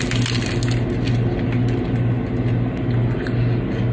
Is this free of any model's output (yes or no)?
yes